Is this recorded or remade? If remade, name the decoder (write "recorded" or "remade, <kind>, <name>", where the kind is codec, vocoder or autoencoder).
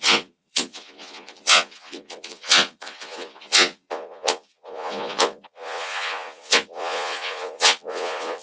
remade, vocoder, Vocos